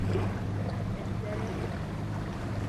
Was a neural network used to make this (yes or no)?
no